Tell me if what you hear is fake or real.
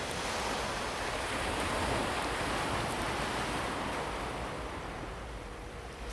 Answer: real